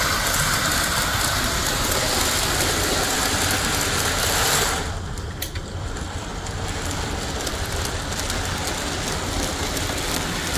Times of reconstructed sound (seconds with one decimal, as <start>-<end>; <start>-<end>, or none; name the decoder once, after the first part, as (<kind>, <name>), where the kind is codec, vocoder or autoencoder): none